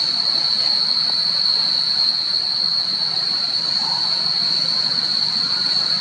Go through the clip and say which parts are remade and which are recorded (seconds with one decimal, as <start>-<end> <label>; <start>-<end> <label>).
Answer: 0.0-2.7 recorded; 2.7-4.0 remade; 4.0-6.0 recorded